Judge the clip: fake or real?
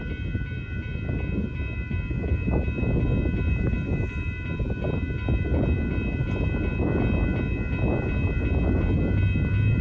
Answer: real